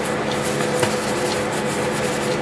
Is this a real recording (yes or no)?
yes